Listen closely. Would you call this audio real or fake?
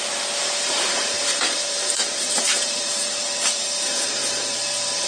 fake